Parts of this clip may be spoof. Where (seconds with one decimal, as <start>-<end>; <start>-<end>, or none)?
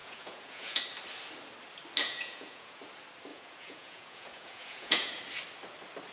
0.0-0.8; 2.0-2.8; 3.3-5.2